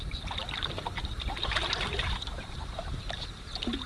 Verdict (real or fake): real